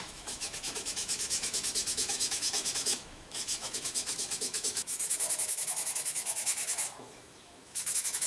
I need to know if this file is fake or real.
fake